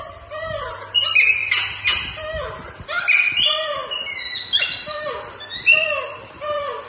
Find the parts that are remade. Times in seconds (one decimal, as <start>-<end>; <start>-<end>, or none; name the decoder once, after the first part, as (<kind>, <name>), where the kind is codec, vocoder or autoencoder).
0.0-1.4 (vocoder, BigVGAN v2); 2.5-6.9